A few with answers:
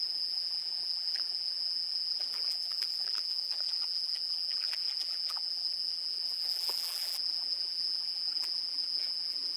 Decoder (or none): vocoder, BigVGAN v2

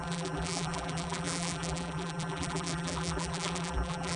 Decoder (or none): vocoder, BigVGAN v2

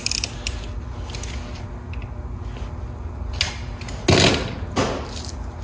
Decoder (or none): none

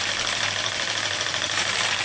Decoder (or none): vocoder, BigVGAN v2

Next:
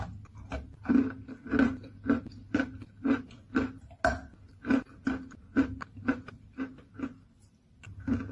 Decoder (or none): none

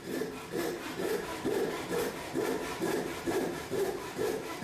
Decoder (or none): none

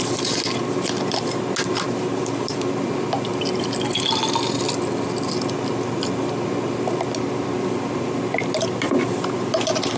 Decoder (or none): none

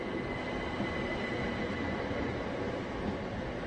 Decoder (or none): none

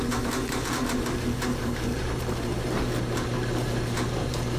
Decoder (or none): vocoder, BigVGAN v2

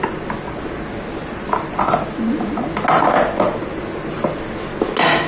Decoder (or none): none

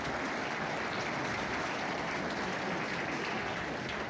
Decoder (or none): none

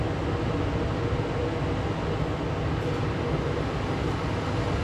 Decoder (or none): none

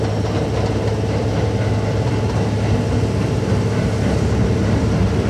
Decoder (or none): none